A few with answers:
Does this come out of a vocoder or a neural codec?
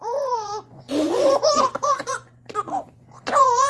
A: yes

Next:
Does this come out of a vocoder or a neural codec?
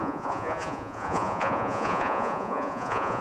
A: yes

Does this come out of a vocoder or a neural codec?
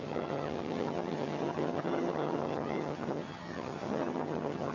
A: yes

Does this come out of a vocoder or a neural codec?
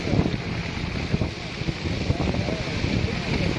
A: no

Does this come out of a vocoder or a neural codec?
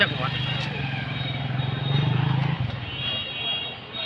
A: no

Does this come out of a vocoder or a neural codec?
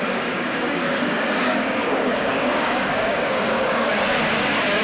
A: yes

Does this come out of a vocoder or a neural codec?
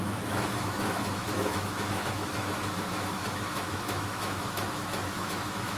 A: yes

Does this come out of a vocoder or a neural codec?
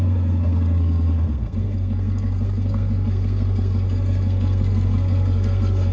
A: yes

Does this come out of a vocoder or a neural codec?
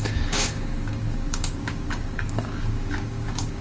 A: yes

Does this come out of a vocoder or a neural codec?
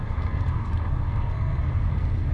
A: yes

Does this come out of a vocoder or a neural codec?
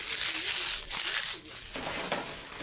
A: no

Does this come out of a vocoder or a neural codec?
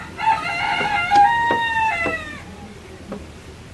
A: no